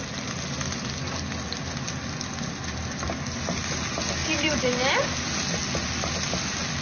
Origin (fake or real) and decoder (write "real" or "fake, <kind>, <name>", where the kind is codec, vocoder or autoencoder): real